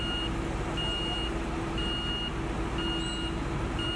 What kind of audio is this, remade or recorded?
recorded